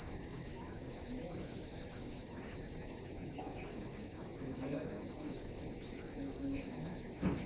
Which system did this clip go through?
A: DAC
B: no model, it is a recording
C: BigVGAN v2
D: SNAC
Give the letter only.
A